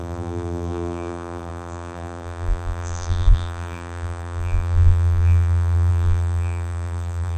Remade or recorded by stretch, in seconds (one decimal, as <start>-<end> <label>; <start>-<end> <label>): 0.0-7.4 remade